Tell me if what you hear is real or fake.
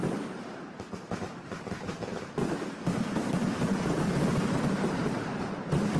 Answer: fake